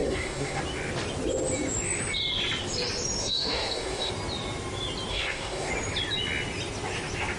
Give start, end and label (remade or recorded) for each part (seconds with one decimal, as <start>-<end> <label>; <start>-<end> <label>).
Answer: 0.0-0.6 remade; 0.6-3.2 recorded; 3.2-4.1 remade; 4.1-5.1 recorded; 5.1-5.7 remade; 5.7-7.4 recorded